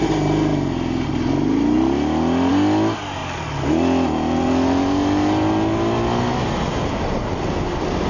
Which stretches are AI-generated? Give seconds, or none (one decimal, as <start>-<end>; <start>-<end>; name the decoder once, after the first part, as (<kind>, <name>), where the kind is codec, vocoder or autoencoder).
none